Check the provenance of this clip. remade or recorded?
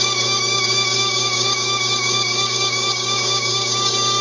remade